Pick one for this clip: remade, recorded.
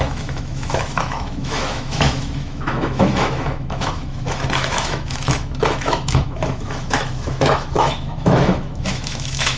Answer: remade